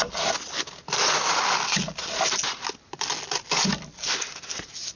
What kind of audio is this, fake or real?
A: real